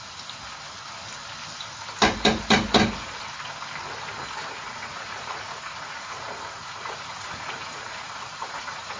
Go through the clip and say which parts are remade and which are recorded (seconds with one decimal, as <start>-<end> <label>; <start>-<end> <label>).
0.0-4.4 recorded; 4.4-9.0 remade

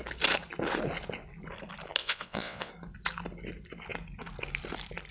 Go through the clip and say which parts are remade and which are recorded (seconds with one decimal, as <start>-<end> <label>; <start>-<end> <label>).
0.0-2.0 recorded; 2.0-2.7 remade; 2.7-5.1 recorded